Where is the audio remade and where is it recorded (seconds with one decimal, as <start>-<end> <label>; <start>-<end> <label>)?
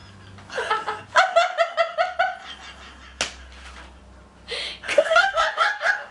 0.0-4.9 recorded; 4.9-6.1 remade